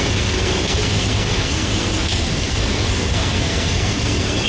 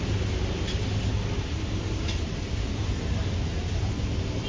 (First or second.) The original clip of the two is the second